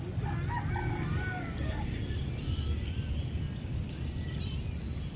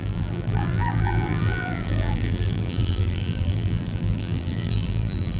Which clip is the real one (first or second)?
first